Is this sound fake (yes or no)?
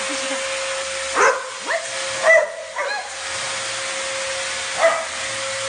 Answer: no